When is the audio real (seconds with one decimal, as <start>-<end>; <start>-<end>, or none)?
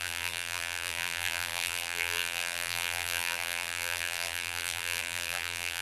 none